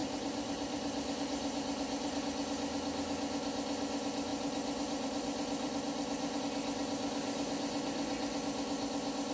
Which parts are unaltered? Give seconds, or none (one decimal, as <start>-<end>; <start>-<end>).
2.2-4.3; 6.4-9.3